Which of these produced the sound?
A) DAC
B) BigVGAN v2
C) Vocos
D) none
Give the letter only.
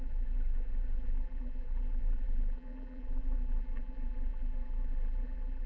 B